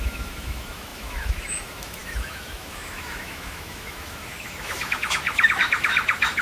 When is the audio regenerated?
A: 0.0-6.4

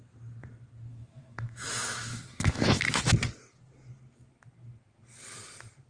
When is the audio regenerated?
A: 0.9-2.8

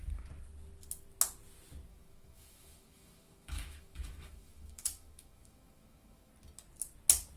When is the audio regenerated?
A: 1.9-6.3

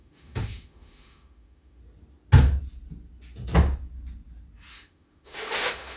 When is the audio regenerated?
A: 0.0-1.8; 4.7-6.0